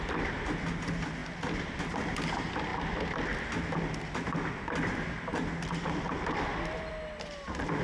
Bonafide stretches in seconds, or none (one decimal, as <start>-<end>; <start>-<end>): 0.0-7.8